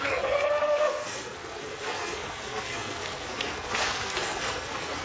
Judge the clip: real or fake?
fake